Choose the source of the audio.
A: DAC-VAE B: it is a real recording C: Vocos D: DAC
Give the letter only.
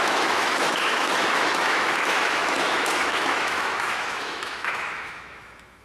A